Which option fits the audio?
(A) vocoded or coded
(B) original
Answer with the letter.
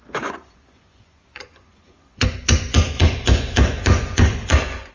A